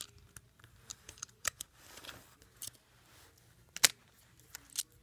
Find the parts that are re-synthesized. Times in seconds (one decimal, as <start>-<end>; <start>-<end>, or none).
0.9-2.4